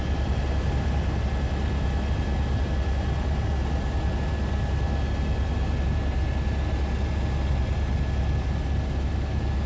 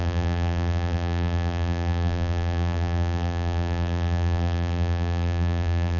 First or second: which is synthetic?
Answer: second